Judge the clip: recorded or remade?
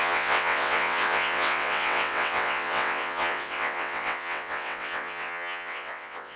remade